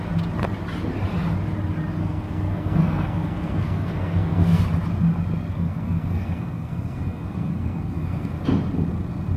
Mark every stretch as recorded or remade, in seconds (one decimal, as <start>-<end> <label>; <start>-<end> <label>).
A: 0.0-2.0 recorded; 2.0-4.6 remade; 4.6-5.5 recorded; 5.5-8.3 remade; 8.3-9.4 recorded